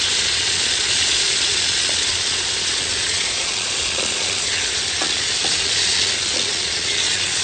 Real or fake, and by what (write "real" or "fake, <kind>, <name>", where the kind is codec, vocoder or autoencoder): fake, vocoder, Vocos